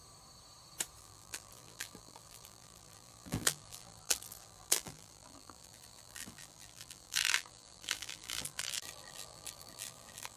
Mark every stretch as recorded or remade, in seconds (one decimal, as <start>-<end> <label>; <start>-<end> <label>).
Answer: 0.0-1.0 recorded; 1.0-10.4 remade